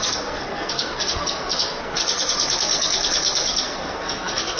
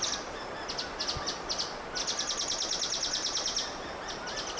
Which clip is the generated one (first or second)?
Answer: first